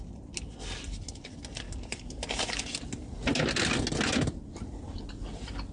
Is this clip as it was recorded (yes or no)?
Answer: yes